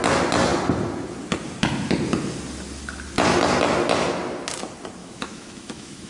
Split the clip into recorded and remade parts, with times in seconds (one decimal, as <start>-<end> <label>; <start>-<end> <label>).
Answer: 0.0-5.0 recorded; 5.0-6.1 remade